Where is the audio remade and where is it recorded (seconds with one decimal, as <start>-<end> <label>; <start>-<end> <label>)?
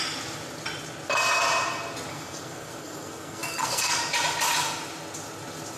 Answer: 0.0-2.1 recorded; 2.1-4.0 remade; 4.0-5.8 recorded